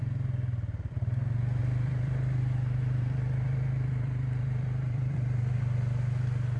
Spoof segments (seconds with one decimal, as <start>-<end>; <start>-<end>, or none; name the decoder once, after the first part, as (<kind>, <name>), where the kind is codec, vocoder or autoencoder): 1.6-5.6 (vocoder, BigVGAN v2)